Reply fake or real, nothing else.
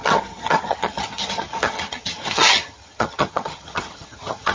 fake